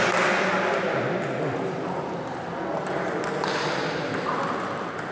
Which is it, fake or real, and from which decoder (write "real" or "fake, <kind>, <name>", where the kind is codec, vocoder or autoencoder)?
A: real